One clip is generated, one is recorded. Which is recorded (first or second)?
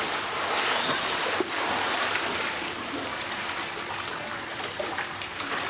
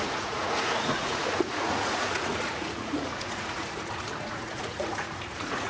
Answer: first